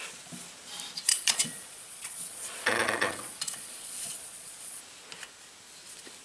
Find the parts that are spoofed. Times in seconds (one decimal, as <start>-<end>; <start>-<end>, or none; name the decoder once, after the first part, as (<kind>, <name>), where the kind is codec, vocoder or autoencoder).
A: 1.1-4.8 (vocoder, Vocos)